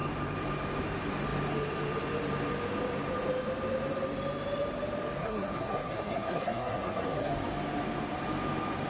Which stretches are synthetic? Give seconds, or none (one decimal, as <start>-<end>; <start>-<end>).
5.2-7.3